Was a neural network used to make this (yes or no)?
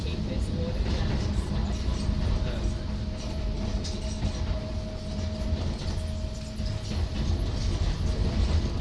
no